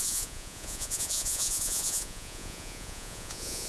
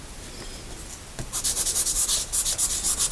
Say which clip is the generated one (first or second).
first